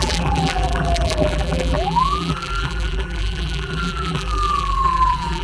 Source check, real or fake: fake